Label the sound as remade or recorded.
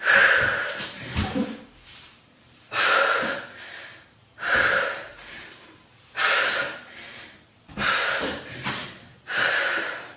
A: remade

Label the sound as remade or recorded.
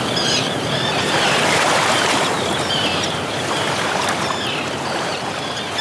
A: remade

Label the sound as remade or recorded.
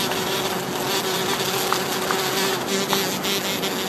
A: recorded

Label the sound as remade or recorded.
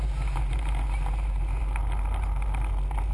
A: recorded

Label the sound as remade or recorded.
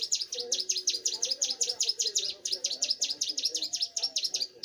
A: remade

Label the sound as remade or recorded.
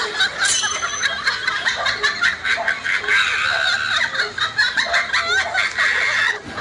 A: recorded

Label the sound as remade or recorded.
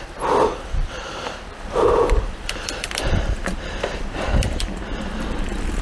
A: remade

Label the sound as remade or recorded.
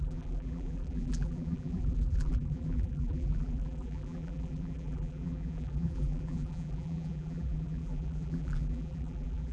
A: remade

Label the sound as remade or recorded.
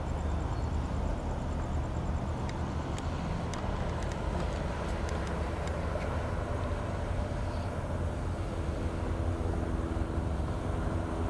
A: recorded